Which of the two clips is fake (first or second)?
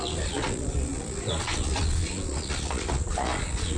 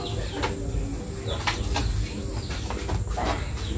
first